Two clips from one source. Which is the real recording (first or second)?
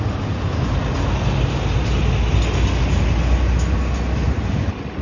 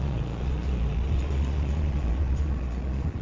first